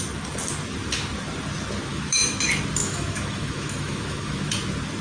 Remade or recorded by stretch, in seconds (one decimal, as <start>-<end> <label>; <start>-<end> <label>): 0.0-1.9 recorded; 1.9-2.4 remade; 2.4-2.8 recorded; 2.8-4.5 remade; 4.5-5.0 recorded